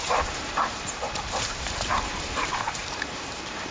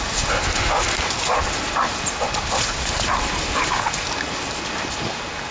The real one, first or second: second